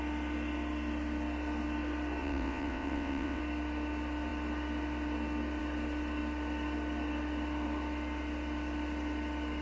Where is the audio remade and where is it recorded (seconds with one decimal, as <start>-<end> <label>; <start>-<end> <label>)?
0.0-2.2 recorded; 2.2-3.4 remade; 3.4-9.6 recorded